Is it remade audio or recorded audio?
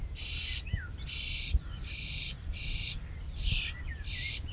recorded